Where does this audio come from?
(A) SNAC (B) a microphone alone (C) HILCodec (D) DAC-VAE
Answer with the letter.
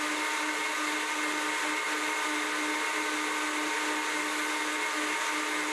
B